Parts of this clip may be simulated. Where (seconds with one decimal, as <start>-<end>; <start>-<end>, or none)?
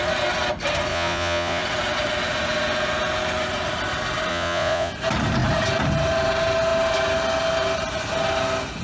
0.9-1.6; 4.3-4.9